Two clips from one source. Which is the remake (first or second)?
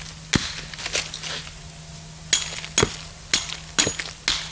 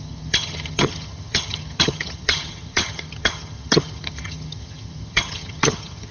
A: second